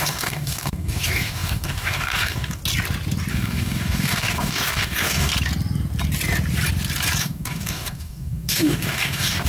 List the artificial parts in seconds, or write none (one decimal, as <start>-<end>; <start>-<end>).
0.0-2.6; 3.3-5.3; 7.2-9.5